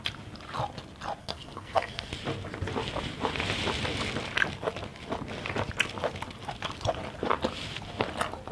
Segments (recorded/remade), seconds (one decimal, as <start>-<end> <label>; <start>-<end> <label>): 0.0-1.2 recorded; 1.2-2.1 remade; 2.1-8.5 recorded